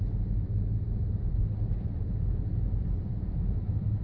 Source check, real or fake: real